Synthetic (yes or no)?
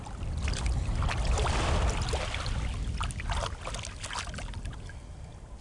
no